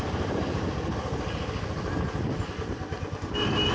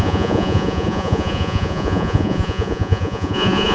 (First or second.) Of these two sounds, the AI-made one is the second